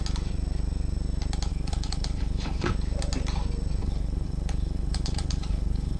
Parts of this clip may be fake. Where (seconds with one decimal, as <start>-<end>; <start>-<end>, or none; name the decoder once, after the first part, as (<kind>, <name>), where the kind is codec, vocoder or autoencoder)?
1.5-2.7 (codec, HILCodec); 3.8-6.0